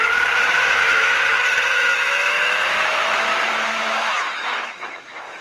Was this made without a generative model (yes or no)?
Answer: no